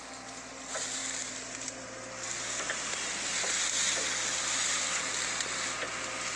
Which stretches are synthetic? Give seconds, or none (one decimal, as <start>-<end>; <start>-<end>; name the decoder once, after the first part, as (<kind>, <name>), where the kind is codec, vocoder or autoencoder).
none